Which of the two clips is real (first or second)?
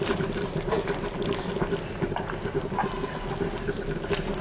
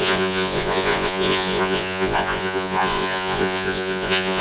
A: first